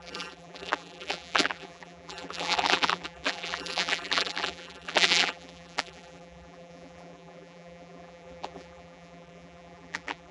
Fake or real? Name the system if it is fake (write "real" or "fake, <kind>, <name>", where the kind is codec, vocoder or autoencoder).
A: fake, vocoder, BigVGAN v2